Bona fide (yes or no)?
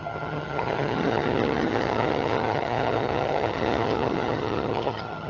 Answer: no